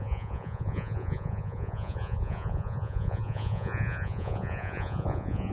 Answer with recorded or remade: remade